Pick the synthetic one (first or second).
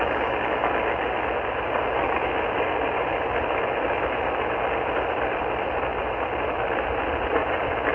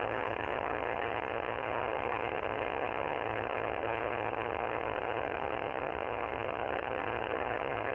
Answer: second